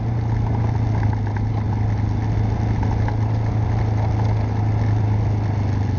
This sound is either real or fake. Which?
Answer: real